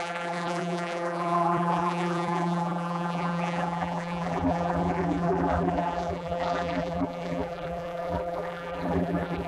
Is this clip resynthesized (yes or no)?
yes